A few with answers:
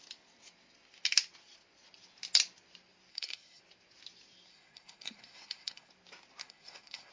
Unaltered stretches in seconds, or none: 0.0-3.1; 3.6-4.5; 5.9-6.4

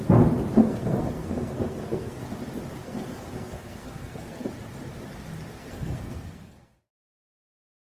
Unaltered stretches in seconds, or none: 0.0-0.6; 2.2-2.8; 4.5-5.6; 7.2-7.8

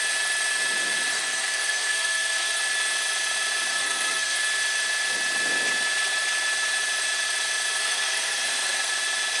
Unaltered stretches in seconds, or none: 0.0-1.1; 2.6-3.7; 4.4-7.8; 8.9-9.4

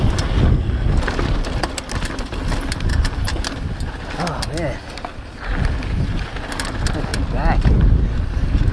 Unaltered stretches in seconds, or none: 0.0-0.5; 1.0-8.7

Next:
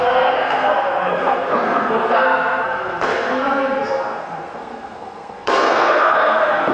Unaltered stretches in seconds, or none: none